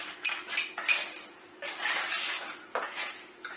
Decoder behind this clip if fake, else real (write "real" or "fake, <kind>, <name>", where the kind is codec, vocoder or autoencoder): fake, vocoder, BigVGAN v2